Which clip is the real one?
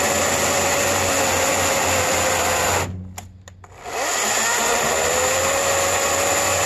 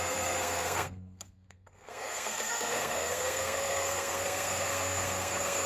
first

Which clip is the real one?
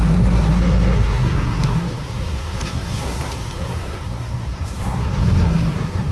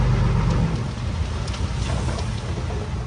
second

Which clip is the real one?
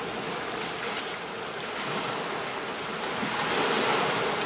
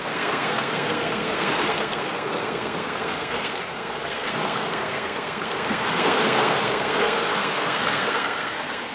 first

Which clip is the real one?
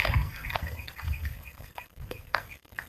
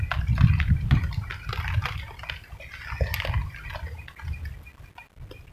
second